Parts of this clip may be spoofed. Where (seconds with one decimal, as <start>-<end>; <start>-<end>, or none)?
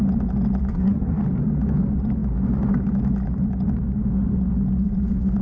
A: 0.7-1.2